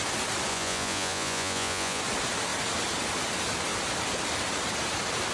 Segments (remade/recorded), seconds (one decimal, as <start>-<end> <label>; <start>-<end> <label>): 0.0-0.5 recorded; 0.5-2.0 remade; 2.0-5.3 recorded